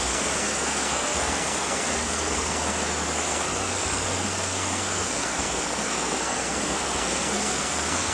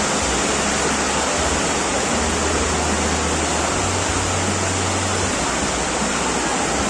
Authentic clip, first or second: second